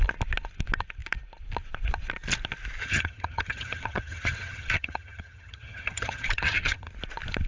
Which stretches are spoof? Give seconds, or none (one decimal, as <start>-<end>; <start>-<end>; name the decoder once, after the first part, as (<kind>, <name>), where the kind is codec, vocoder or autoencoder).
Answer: 2.8-6.9 (vocoder, HiFi-GAN)